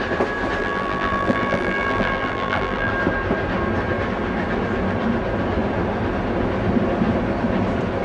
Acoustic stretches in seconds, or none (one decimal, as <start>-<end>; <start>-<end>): 0.0-0.6; 2.9-8.0